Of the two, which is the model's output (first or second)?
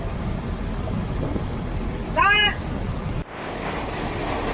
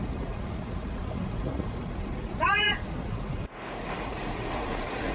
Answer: second